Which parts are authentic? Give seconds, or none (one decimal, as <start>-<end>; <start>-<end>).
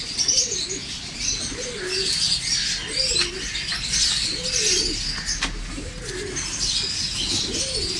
0.0-8.0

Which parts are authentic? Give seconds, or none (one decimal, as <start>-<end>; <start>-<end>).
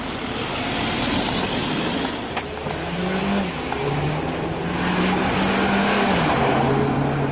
0.0-7.3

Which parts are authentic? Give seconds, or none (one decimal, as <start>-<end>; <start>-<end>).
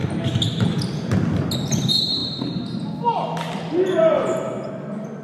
0.0-5.2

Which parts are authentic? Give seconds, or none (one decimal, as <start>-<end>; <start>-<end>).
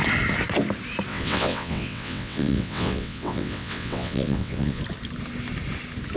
0.0-1.1; 4.8-6.2